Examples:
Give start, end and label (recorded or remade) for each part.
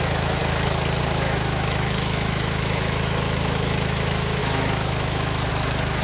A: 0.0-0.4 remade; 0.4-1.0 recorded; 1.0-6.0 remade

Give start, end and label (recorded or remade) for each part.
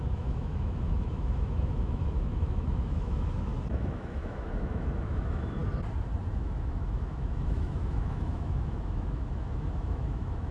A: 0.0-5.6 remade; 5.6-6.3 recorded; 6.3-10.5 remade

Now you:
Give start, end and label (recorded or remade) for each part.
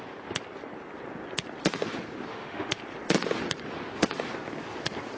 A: 0.0-2.3 recorded; 2.3-2.8 remade; 2.8-5.2 recorded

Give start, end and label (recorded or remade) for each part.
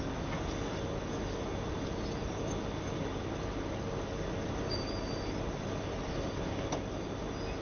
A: 0.0-7.6 recorded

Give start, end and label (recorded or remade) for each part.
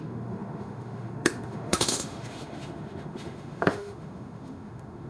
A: 0.0-5.1 remade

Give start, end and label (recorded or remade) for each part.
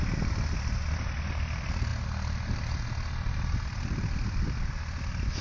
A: 0.0-5.4 recorded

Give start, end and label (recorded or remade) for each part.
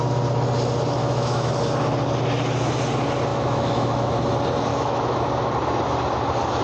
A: 0.0-1.0 recorded; 1.0-1.5 remade; 1.5-3.3 recorded; 3.3-4.1 remade; 4.1-4.7 recorded; 4.7-5.2 remade; 5.2-6.6 recorded